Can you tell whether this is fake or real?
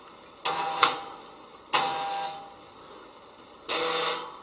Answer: real